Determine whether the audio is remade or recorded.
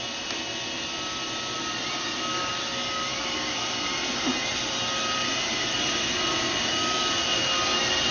recorded